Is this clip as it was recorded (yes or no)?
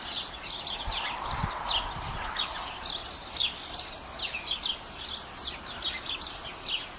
yes